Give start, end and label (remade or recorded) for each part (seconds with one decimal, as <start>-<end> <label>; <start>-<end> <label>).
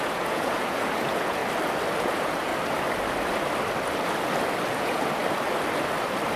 0.0-1.4 remade; 1.4-2.0 recorded; 2.0-2.5 remade; 2.5-4.7 recorded; 4.7-5.2 remade; 5.2-6.4 recorded